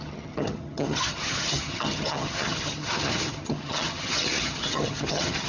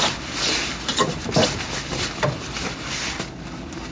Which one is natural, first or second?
second